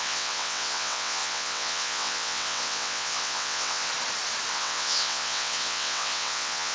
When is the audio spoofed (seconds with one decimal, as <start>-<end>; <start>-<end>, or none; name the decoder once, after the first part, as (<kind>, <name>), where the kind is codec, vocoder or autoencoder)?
0.0-3.9 (vocoder, WaveNeXt); 4.5-6.7

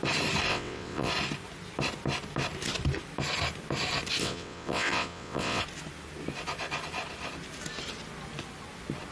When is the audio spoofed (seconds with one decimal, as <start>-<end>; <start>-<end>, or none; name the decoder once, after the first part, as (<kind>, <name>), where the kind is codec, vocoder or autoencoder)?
0.5-1.1 (vocoder, WaveNeXt); 4.2-5.6

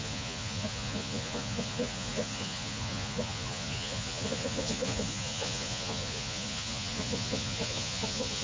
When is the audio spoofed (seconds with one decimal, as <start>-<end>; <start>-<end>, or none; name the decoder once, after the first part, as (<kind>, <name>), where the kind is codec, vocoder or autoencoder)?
0.0-8.4 (vocoder, Vocos)

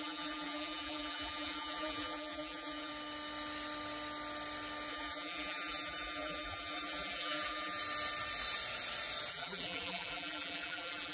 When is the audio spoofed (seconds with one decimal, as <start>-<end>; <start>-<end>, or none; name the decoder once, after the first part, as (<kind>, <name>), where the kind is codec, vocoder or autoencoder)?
0.0-2.9 (vocoder, BigVGAN v2); 4.9-7.8; 9.3-11.1